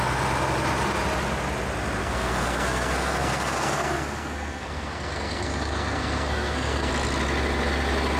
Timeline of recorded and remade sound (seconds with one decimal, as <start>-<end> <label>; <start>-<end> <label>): 0.0-2.0 recorded; 2.0-6.9 remade; 6.9-8.2 recorded